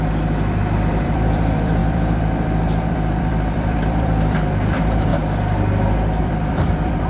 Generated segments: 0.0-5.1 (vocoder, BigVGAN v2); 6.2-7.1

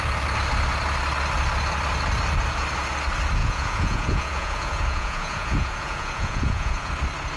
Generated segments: 3.4-6.9 (vocoder, Vocos)

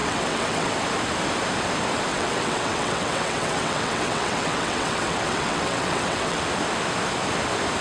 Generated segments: 0.0-0.7 (vocoder, WaveNeXt); 2.1-6.4

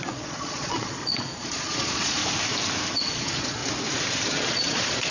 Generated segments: 0.0-2.2 (vocoder, Vocos); 3.0-3.6; 4.3-5.1

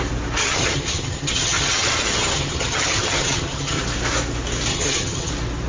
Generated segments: 0.4-3.8 (vocoder, HiFi-GAN); 4.7-5.3

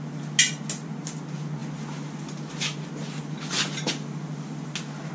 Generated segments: none

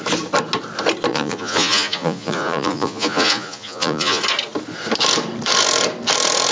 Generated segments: 1.1-4.2 (vocoder, Vocos)

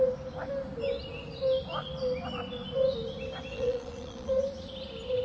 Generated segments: 3.5-4.3 (vocoder, Vocos)